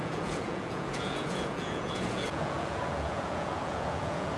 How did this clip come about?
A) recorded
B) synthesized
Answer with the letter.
B